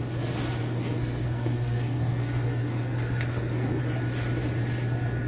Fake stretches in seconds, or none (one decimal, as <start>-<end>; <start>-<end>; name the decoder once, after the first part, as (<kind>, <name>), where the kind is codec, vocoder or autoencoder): 0.6-3.8 (codec, SNAC)